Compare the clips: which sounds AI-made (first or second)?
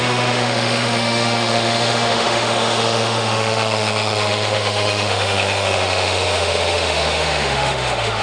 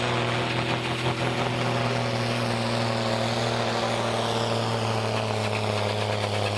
first